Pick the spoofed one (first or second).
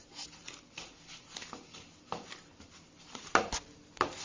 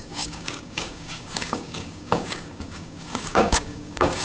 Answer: second